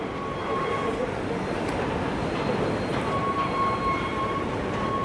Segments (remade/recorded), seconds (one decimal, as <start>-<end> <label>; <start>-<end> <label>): 0.0-0.4 recorded; 0.4-1.8 remade; 1.8-2.9 recorded; 2.9-4.6 remade; 4.6-5.0 recorded